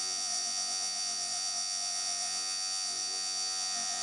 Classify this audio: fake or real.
fake